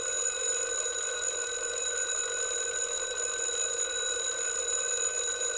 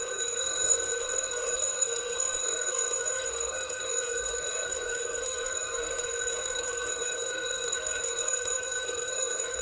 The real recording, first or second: first